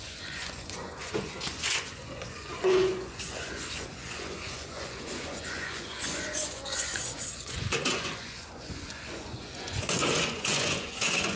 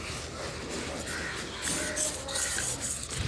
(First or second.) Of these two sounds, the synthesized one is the first